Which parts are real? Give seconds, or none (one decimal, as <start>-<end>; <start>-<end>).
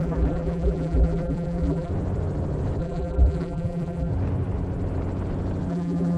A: 1.9-2.8; 4.1-5.7